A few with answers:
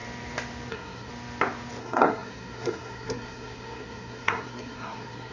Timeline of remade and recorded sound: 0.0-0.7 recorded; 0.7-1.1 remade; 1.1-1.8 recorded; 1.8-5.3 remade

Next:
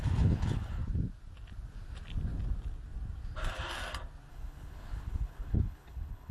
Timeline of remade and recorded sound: 0.0-0.8 remade; 0.8-4.3 recorded; 4.3-6.3 remade

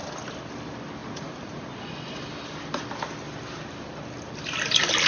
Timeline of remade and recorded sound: 0.0-1.0 recorded; 1.0-2.0 remade; 2.0-5.1 recorded

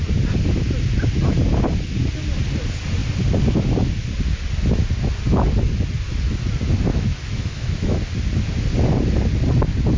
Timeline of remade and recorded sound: 0.0-6.9 recorded; 6.9-8.0 remade; 8.0-10.0 recorded

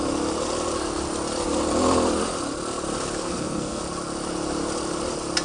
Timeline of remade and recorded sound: 0.0-3.2 recorded; 3.2-3.8 remade; 3.8-5.4 recorded

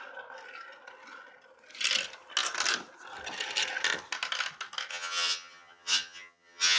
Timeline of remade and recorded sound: 0.0-4.9 recorded; 4.9-6.8 remade

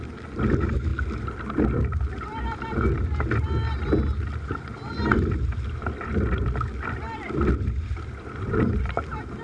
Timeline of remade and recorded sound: 0.0-9.4 recorded

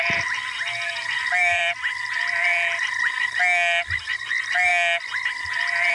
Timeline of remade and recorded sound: 0.0-2.5 remade; 2.5-4.3 recorded; 4.3-4.7 remade; 4.7-5.9 recorded